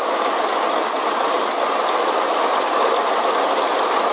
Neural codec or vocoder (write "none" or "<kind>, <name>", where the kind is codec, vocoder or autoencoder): none